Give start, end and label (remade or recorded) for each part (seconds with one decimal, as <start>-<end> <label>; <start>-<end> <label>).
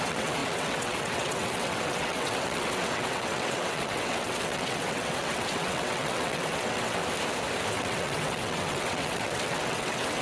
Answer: 0.0-7.0 remade; 7.0-7.7 recorded; 7.7-10.2 remade